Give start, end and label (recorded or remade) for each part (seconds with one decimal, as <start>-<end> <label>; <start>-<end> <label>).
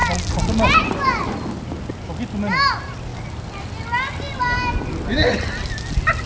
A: 0.0-6.3 recorded